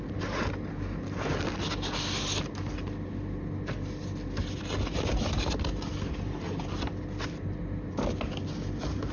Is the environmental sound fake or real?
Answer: real